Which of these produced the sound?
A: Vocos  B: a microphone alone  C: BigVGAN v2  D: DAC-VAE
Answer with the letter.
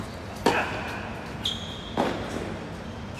B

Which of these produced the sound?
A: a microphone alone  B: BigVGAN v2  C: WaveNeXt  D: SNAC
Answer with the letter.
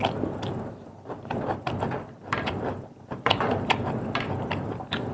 B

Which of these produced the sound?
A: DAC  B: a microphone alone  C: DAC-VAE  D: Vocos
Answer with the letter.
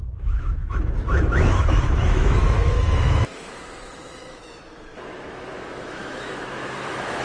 C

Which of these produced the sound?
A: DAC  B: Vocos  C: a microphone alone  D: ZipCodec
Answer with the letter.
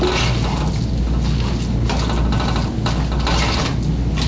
C